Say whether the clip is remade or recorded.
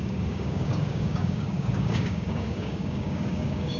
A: remade